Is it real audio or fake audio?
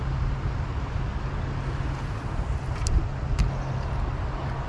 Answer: real